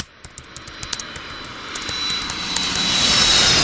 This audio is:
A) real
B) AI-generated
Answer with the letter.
A